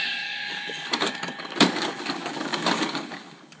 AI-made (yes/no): yes